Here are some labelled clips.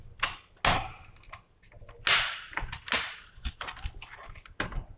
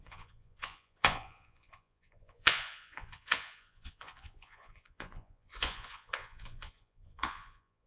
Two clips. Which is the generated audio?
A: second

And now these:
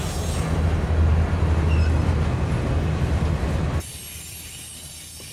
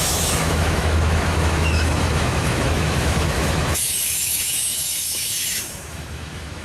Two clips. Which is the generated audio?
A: second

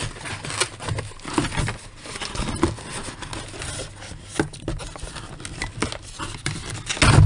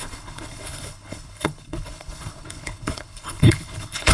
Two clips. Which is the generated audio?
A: second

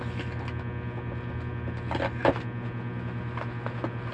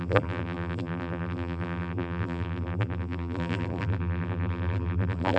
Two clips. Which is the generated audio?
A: second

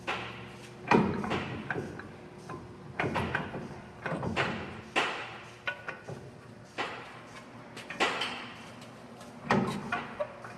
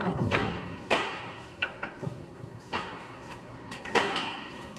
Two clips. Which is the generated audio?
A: second